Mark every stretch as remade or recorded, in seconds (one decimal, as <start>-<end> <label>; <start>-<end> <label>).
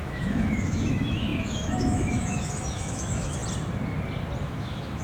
0.0-3.4 remade; 3.4-4.4 recorded; 4.4-5.0 remade